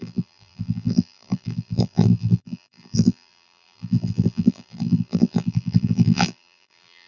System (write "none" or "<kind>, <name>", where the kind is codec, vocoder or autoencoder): vocoder, BigVGAN v2